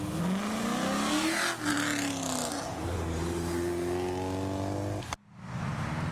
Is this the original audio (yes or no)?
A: yes